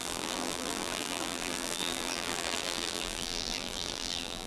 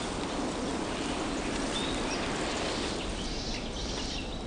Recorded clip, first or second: second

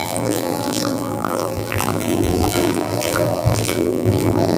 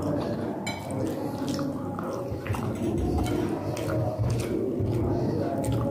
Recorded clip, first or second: second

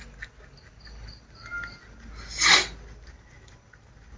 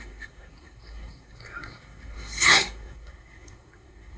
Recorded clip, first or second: first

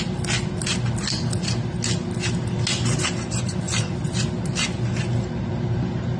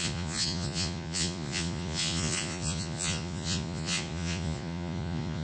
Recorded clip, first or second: first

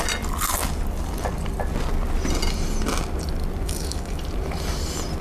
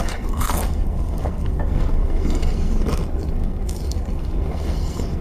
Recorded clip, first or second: first